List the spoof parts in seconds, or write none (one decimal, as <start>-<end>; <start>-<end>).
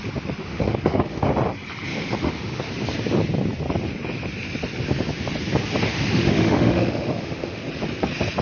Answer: 0.4-1.3; 1.9-2.7; 5.9-7.6